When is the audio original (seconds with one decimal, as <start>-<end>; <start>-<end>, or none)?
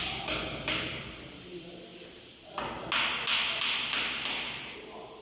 0.0-5.2